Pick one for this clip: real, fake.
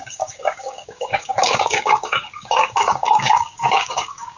fake